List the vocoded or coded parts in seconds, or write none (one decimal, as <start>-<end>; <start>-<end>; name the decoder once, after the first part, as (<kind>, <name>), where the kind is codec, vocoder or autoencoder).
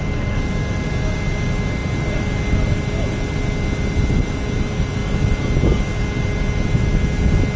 none